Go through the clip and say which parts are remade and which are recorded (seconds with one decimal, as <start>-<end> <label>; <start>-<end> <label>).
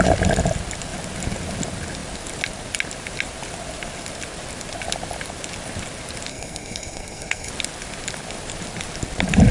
0.0-6.3 recorded; 6.3-7.5 remade; 7.5-9.5 recorded